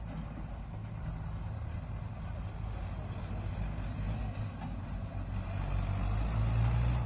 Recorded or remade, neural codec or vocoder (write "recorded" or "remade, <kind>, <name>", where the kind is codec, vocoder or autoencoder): recorded